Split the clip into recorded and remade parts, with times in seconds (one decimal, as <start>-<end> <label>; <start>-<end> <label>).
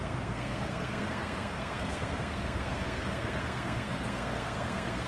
0.0-5.1 remade